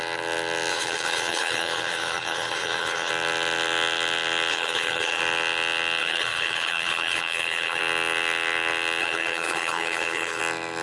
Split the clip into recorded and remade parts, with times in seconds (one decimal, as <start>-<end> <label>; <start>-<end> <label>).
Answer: 0.0-0.7 recorded; 0.7-3.1 remade; 3.1-4.5 recorded; 4.5-5.2 remade; 5.2-6.0 recorded; 6.0-7.8 remade; 7.8-9.0 recorded; 9.0-10.4 remade; 10.4-10.8 recorded